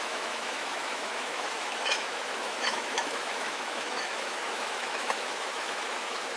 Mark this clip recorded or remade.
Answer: remade